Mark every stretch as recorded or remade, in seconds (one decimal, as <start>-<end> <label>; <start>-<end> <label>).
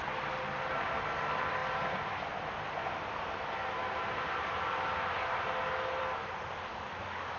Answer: 0.0-6.7 recorded; 6.7-7.4 remade